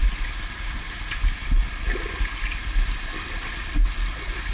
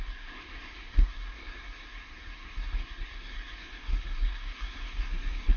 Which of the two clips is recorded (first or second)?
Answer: first